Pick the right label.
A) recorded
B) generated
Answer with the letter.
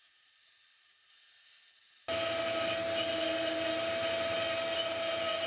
A